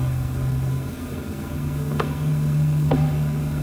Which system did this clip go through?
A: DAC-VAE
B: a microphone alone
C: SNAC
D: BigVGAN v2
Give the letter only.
C